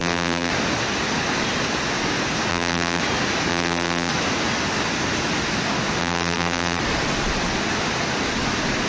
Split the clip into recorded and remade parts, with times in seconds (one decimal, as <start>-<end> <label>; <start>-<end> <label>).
0.0-0.5 remade; 0.5-2.5 recorded; 2.5-3.0 remade; 3.0-3.5 recorded; 3.5-4.1 remade; 4.1-6.0 recorded; 6.0-6.8 remade; 6.8-8.9 recorded